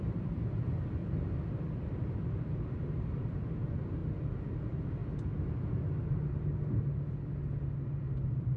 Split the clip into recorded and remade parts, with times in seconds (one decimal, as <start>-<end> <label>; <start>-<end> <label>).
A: 0.0-1.0 remade; 1.0-2.2 recorded; 2.2-4.0 remade; 4.0-4.6 recorded; 4.6-5.0 remade; 5.0-7.9 recorded; 7.9-8.6 remade